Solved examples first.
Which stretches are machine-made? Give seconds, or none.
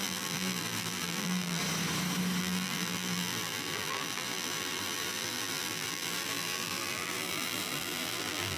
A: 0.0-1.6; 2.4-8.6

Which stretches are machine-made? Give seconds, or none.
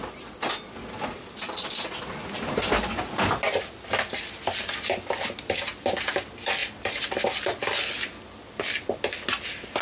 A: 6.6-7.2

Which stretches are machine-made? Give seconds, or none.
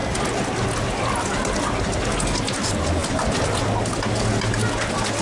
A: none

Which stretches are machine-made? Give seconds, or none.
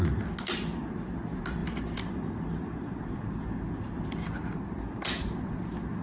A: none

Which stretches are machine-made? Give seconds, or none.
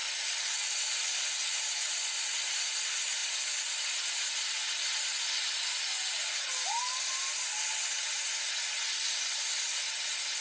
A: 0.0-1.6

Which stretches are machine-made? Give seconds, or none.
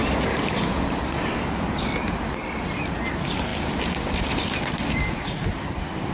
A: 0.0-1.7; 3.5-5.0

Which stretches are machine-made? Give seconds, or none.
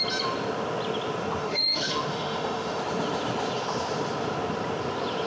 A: 1.4-2.8